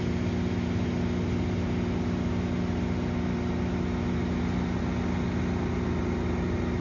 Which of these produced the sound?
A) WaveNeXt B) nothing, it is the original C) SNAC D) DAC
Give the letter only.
B